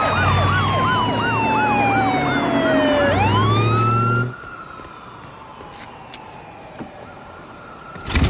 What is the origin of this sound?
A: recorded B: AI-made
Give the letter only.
A